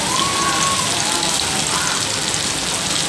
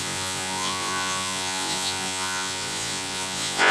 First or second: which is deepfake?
second